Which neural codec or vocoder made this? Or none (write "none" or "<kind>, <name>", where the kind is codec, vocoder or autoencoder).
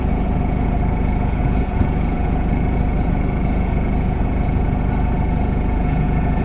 vocoder, Vocos